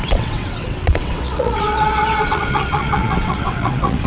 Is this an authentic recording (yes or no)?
no